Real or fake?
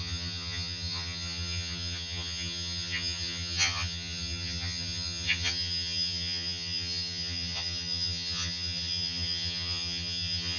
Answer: fake